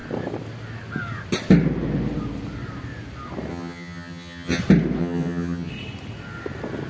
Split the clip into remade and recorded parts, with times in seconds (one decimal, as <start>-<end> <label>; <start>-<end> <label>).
0.0-3.5 recorded; 3.5-4.6 remade; 4.6-5.0 recorded; 5.0-5.7 remade; 5.7-6.9 recorded